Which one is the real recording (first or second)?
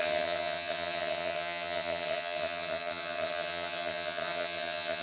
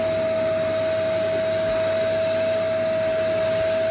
second